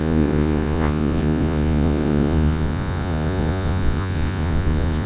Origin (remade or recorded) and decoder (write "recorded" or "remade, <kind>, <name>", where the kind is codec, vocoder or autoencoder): remade, vocoder, Vocos